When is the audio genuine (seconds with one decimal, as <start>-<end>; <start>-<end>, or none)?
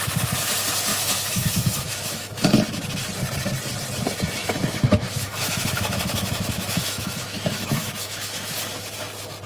0.0-0.9; 2.5-4.4; 8.6-9.5